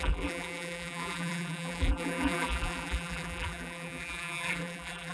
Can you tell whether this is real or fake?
fake